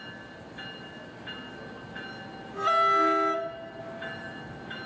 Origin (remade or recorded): recorded